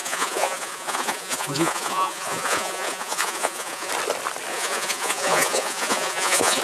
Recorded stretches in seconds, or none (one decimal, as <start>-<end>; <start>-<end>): 3.9-4.5